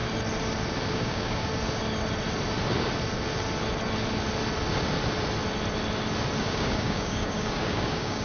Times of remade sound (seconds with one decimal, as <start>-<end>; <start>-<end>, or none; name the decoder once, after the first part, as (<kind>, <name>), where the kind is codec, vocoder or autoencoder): 0.9-1.5 (codec, DAC); 6.4-8.2